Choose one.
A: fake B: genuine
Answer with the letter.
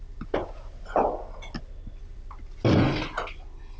B